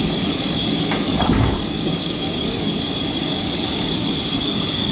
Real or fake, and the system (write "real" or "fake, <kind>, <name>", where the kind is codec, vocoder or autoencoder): fake, codec, DAC